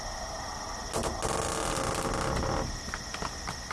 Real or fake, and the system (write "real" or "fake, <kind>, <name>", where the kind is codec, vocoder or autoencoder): real